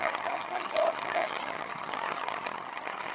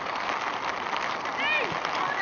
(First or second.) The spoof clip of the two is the first